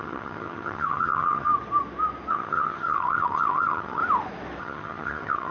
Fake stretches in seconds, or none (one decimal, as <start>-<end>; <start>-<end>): 0.0-1.5; 2.3-4.0; 4.6-5.5